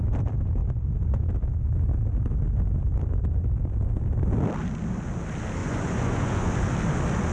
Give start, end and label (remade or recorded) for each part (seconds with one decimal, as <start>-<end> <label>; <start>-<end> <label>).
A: 0.0-5.6 recorded; 5.6-6.5 remade; 6.5-7.3 recorded